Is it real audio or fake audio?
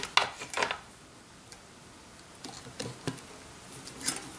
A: real